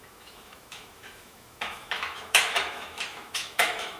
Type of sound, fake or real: fake